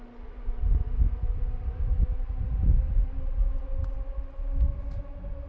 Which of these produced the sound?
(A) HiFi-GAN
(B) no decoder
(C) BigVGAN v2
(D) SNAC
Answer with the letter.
B